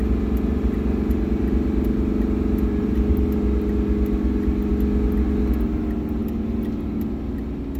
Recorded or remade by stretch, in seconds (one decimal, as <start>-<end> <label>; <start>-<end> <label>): 0.0-7.8 recorded